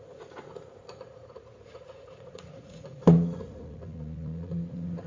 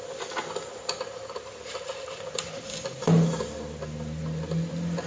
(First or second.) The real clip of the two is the second